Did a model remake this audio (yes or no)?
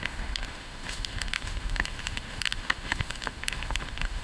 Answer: yes